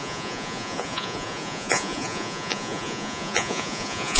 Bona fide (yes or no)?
no